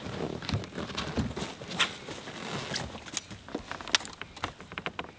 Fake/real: real